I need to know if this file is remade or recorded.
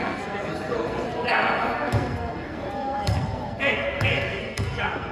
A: remade